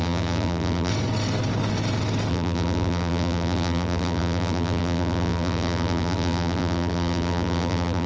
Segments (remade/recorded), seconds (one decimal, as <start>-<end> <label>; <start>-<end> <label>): 0.0-0.9 remade; 0.9-2.3 recorded; 2.3-8.1 remade